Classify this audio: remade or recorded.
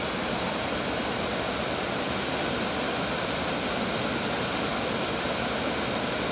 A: recorded